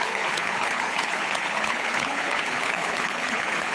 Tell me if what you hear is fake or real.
fake